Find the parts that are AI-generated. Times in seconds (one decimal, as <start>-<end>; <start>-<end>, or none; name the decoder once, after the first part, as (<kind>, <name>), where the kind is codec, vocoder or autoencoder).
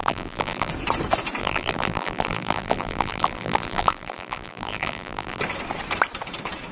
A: 0.0-0.7 (vocoder, BigVGAN v2); 1.4-5.4